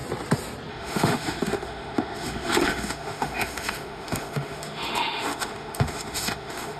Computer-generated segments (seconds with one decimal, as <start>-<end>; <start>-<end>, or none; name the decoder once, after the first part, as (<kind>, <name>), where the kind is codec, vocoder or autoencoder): 0.7-6.8 (autoencoder, DAC-VAE)